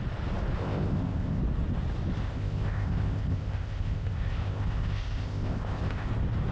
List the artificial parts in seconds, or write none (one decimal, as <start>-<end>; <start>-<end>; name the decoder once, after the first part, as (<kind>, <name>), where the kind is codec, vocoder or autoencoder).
0.6-1.4 (codec, ZipCodec); 2.2-6.1